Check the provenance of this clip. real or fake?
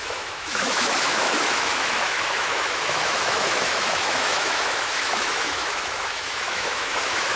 fake